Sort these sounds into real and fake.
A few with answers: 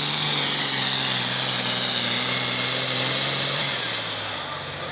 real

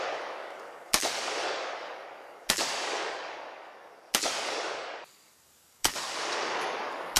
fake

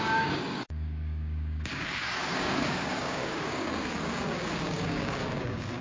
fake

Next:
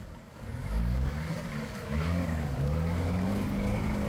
fake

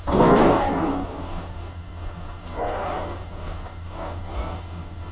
fake